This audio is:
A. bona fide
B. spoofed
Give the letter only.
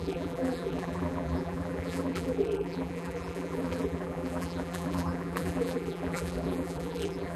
B